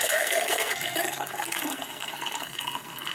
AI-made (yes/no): yes